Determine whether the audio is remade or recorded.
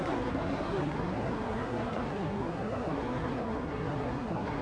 remade